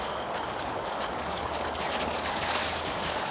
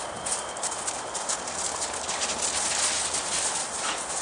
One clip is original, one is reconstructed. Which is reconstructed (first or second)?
first